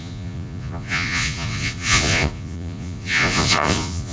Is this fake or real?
fake